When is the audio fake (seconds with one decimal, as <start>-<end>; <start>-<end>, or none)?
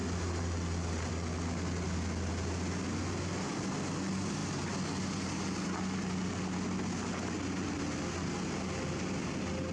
none